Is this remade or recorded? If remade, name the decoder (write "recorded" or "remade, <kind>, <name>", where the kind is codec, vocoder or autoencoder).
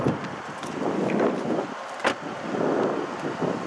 recorded